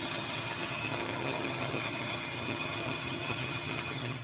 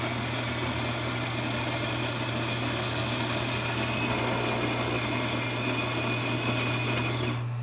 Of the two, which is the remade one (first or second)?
first